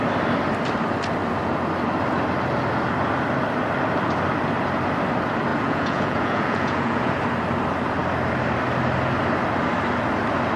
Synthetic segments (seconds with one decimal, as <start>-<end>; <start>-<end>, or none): 5.5-7.2